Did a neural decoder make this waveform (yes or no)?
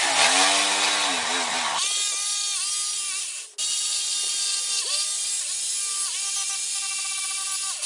no